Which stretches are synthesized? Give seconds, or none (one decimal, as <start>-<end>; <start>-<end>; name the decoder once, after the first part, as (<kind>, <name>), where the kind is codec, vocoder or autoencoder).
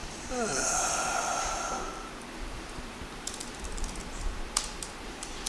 0.0-2.9 (vocoder, BigVGAN v2); 3.5-5.5